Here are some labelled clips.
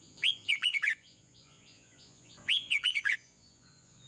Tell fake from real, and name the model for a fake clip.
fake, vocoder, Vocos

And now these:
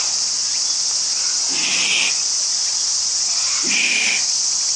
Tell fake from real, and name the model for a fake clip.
real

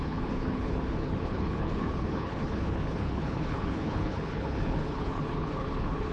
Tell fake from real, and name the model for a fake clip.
fake, codec, HILCodec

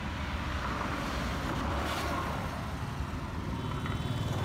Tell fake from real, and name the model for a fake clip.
real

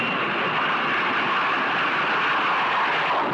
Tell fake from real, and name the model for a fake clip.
real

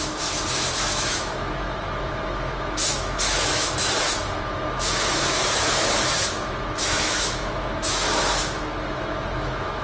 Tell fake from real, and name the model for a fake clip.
fake, autoencoder, DAC-VAE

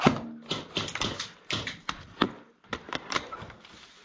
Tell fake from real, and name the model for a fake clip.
real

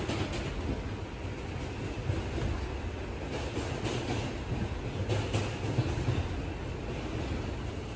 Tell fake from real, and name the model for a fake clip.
real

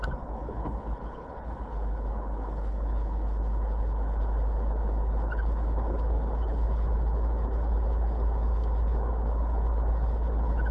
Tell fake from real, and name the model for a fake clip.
fake, codec, HILCodec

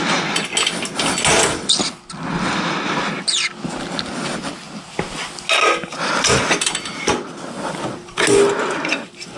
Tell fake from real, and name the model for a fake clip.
real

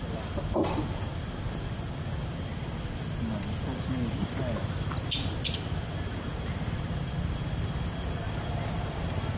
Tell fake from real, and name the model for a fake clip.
real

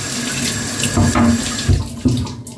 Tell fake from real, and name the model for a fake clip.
real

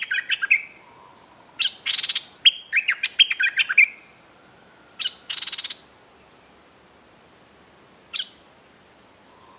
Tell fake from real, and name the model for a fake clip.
real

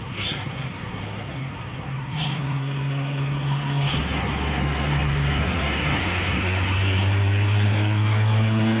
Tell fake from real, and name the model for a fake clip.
fake, codec, SNAC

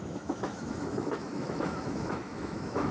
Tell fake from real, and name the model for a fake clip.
fake, autoencoder, DAC-VAE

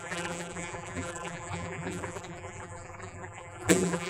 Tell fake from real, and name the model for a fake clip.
fake, vocoder, BigVGAN v2